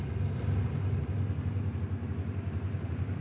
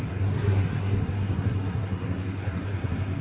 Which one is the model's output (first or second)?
second